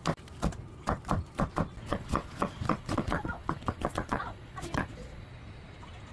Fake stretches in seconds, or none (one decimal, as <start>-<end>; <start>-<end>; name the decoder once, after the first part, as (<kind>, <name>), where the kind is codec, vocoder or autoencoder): 1.9-5.3 (vocoder, Vocos)